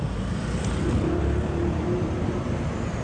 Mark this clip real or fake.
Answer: real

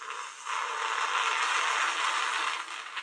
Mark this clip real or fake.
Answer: real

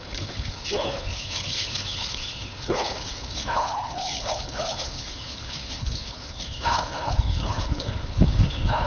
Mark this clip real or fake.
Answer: fake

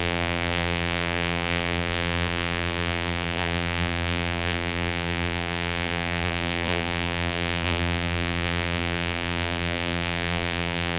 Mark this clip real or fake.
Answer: fake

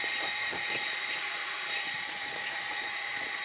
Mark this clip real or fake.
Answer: fake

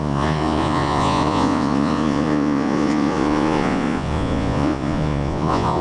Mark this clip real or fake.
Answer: fake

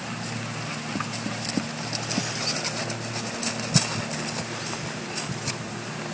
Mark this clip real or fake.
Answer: real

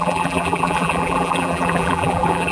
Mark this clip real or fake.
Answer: fake